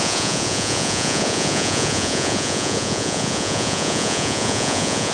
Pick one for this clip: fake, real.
fake